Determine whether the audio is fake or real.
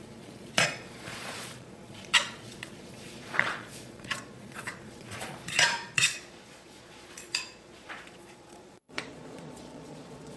fake